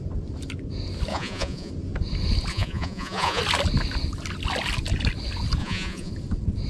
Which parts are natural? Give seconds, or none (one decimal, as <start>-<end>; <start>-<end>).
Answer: 0.0-1.1; 1.7-2.5; 3.4-5.6; 6.1-6.7